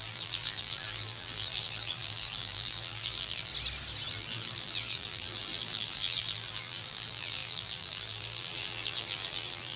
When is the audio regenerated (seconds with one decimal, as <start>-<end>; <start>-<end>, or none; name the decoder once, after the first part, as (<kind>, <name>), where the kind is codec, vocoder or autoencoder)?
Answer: 0.0-3.5 (vocoder, BigVGAN v2); 4.1-9.8